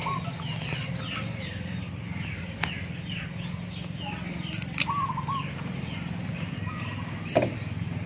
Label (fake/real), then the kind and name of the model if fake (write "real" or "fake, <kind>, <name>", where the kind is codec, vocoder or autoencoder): real